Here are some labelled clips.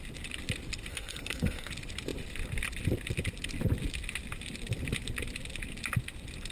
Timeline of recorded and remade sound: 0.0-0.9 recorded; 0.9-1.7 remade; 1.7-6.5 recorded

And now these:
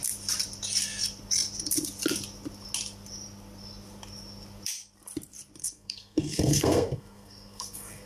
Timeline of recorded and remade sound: 0.0-5.6 recorded; 5.6-8.1 remade